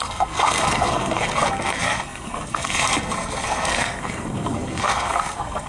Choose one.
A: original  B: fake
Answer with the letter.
B